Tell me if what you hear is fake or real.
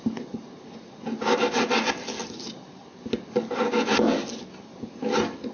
real